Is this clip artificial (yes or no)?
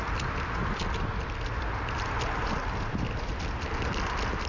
no